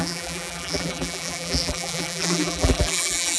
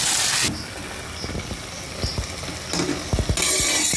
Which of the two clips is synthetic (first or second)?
first